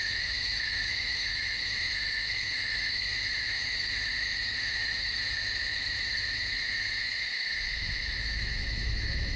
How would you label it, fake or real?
fake